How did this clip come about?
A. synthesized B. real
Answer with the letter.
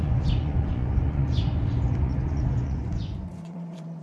A